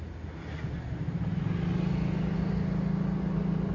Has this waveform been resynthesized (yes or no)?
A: no